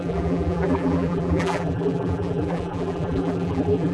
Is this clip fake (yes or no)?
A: yes